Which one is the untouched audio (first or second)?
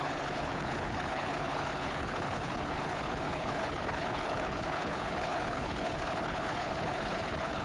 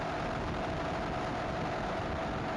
second